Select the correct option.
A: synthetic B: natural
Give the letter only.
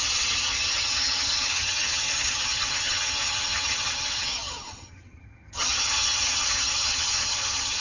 A